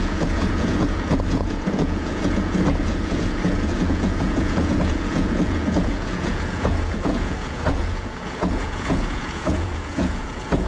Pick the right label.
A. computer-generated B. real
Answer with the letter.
A